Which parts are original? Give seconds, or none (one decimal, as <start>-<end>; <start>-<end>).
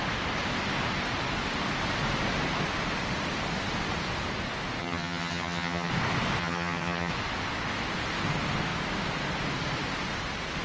0.0-4.8; 5.9-6.4; 7.1-10.6